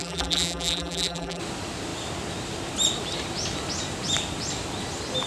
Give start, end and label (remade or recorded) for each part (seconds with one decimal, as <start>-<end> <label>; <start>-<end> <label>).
0.0-1.4 remade; 1.4-5.3 recorded